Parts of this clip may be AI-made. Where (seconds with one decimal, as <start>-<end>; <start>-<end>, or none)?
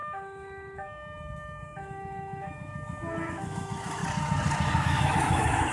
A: 0.0-4.0; 4.8-5.7